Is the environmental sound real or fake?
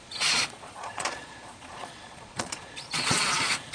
fake